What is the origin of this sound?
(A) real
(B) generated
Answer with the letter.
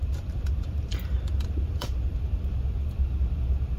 B